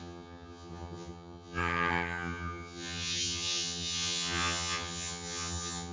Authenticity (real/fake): fake